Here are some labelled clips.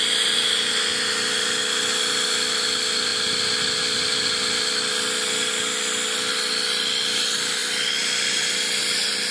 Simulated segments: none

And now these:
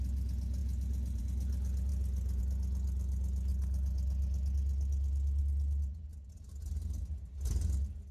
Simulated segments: none

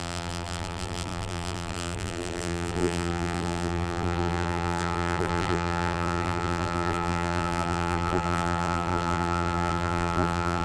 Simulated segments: 0.0-10.6 (vocoder, BigVGAN v2)